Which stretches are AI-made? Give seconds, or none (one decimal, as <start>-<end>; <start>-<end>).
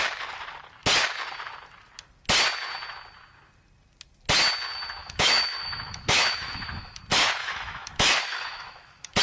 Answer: 5.0-7.0; 7.4-9.2